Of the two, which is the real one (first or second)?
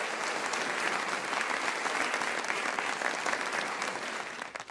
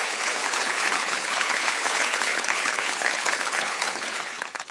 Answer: first